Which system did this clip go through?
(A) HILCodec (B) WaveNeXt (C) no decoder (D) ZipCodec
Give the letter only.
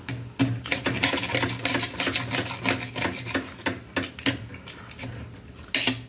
C